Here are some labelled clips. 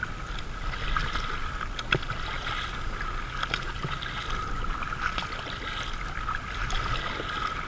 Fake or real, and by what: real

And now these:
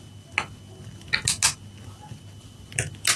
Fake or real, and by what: real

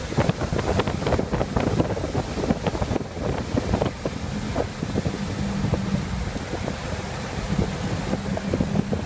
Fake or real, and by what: real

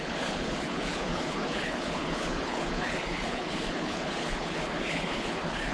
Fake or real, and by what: fake, codec, HILCodec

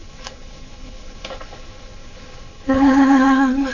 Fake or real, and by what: fake, codec, HILCodec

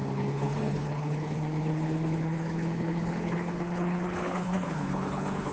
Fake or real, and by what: fake, codec, HILCodec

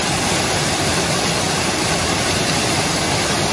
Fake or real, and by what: real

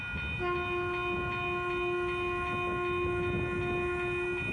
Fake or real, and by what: real